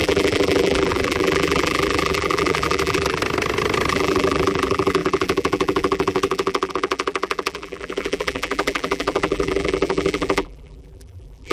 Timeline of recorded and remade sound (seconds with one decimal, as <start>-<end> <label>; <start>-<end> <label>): 0.0-3.2 remade; 3.2-3.9 recorded; 3.9-11.5 remade